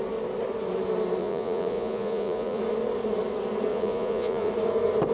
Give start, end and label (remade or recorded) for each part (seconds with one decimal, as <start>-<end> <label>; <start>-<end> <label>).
0.0-1.2 recorded; 1.2-2.6 remade; 2.6-3.7 recorded; 3.7-4.5 remade; 4.5-5.1 recorded